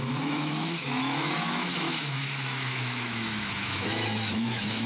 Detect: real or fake fake